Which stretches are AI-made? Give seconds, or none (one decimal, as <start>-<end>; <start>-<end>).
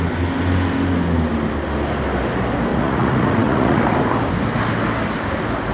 2.7-3.8